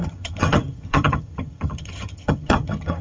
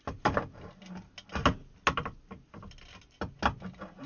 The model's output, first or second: first